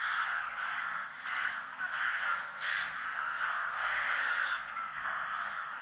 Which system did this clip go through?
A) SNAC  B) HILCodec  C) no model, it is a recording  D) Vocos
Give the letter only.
A